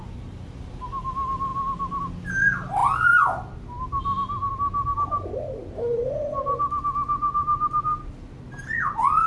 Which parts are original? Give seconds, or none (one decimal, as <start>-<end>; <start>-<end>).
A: 0.0-9.3